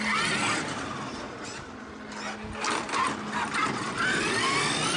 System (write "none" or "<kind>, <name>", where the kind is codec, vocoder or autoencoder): none